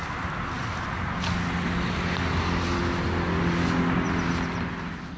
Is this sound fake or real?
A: real